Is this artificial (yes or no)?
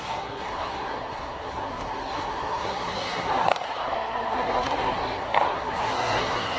yes